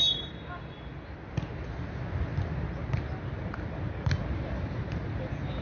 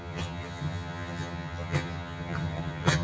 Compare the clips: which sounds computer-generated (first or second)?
second